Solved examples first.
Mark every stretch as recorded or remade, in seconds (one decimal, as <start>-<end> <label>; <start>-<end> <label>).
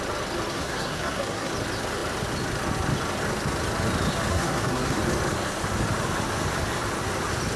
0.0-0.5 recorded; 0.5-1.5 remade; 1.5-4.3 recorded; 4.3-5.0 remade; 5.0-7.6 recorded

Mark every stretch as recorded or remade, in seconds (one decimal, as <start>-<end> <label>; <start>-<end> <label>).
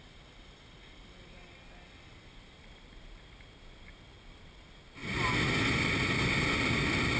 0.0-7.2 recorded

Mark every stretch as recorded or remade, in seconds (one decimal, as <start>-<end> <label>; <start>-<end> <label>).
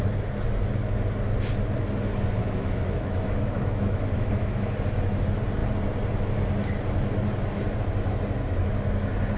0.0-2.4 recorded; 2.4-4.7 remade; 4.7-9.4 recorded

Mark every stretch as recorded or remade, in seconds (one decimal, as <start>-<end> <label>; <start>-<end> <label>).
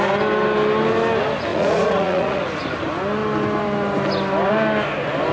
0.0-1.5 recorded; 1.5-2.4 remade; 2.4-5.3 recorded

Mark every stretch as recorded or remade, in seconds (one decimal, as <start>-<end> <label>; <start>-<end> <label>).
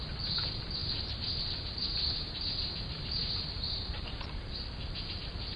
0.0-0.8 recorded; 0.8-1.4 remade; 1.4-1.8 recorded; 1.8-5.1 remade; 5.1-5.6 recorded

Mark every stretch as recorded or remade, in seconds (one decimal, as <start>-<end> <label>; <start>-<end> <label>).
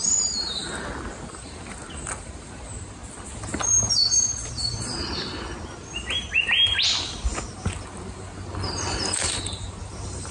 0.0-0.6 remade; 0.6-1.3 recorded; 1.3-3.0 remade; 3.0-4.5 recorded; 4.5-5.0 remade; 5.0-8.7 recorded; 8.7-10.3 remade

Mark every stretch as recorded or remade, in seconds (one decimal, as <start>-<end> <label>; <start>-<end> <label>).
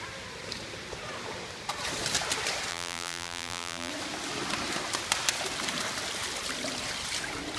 0.0-2.7 recorded; 2.7-3.9 remade; 3.9-7.6 recorded